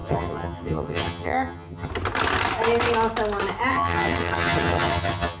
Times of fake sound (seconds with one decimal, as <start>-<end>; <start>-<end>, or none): 0.0-1.9; 3.7-5.4